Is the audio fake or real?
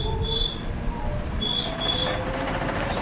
real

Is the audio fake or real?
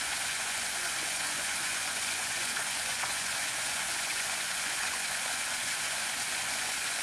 fake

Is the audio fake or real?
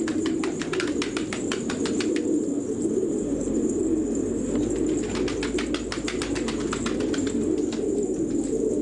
real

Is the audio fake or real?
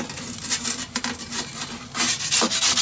real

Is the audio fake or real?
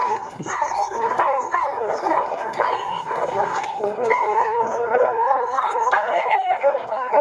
fake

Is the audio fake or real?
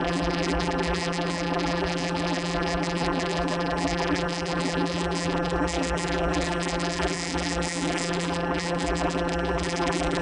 fake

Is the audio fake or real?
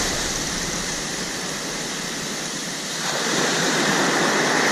fake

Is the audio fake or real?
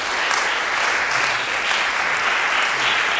real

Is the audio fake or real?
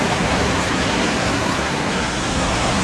fake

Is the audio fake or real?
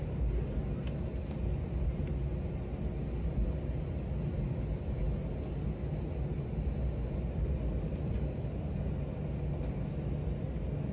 real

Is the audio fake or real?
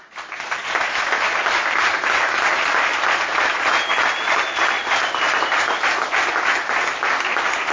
real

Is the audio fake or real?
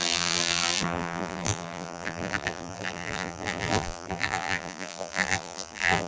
fake